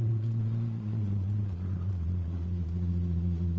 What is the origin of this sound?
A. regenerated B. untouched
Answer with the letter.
A